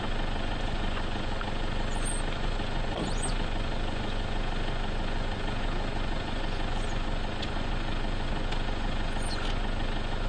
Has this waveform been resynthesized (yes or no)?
yes